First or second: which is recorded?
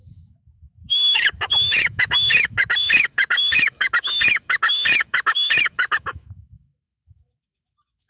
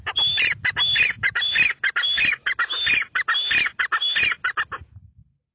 second